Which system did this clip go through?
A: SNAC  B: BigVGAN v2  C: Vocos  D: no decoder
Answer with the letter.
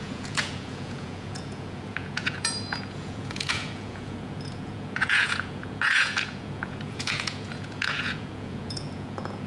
C